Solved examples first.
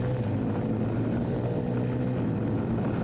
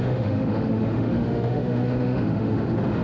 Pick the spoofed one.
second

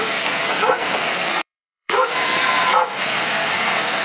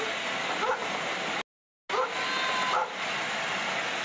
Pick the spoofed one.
first